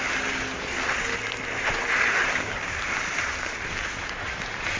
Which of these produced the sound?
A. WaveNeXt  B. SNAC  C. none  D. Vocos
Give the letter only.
C